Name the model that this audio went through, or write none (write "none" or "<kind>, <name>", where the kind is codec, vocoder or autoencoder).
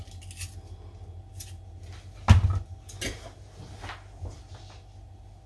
none